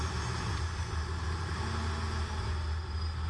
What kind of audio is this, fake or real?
real